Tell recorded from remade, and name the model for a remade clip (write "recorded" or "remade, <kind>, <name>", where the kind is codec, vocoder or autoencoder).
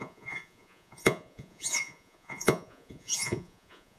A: remade, vocoder, Vocos